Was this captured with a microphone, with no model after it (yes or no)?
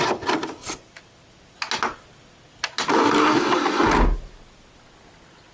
yes